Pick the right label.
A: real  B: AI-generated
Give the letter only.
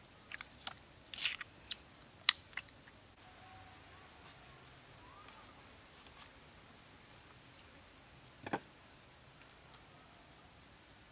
A